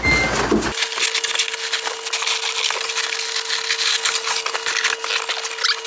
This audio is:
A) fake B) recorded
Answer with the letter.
B